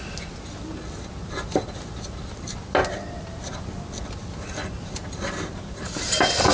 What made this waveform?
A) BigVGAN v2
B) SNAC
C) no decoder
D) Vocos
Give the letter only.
C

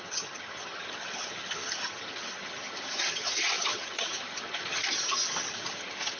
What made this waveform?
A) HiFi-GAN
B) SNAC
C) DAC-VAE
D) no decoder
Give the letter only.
A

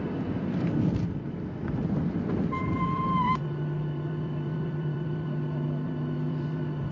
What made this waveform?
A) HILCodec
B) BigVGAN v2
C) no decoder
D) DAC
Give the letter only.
B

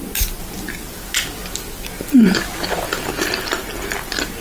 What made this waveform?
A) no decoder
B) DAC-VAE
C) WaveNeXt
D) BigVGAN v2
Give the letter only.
A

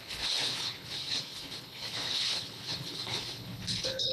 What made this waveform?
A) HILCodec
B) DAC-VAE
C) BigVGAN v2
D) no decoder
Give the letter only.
A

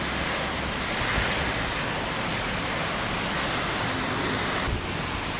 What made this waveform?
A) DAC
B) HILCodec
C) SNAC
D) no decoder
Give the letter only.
D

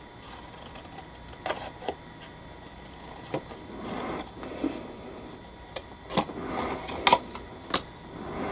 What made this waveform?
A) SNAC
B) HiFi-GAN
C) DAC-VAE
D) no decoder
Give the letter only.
D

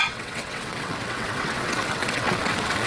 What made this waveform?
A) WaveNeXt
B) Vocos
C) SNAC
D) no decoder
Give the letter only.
A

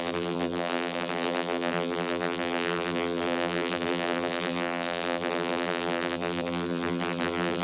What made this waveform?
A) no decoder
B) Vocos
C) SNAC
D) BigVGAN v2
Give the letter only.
D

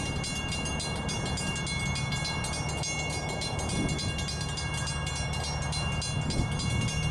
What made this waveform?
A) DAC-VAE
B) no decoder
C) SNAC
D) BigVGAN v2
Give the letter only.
B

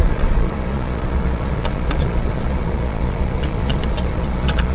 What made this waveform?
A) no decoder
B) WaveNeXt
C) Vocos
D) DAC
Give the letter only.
C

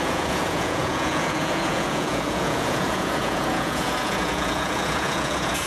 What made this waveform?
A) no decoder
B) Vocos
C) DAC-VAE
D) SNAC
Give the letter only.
B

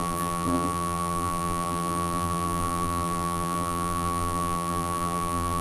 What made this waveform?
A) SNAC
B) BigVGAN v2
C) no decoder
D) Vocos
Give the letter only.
B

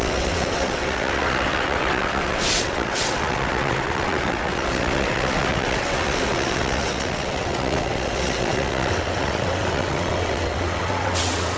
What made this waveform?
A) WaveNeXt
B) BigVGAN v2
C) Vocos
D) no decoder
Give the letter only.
A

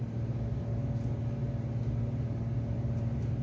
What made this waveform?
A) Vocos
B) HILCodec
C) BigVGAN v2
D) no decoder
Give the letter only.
D